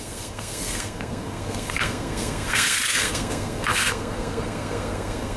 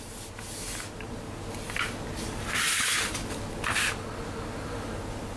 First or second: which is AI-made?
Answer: first